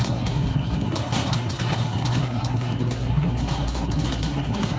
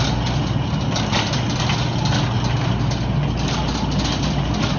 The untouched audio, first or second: second